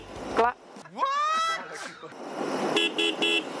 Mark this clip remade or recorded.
recorded